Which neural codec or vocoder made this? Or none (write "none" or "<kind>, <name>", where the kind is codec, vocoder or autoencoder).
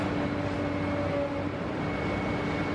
none